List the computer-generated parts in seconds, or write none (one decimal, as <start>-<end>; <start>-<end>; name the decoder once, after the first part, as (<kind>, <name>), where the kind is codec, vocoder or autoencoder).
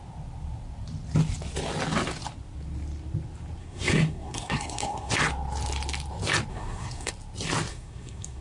3.6-5.1 (codec, SNAC); 6.5-7.1; 7.7-8.4